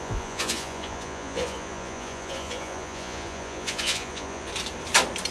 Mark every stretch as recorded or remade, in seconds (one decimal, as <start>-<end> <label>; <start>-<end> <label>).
0.0-4.5 remade; 4.5-5.3 recorded